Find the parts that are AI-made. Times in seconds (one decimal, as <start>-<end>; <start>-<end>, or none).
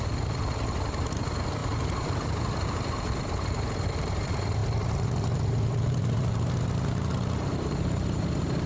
0.0-8.7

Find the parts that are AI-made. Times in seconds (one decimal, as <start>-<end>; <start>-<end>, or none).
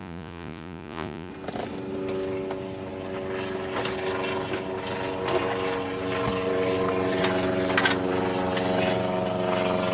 0.0-1.3